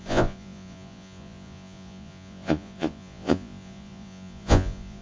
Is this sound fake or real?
fake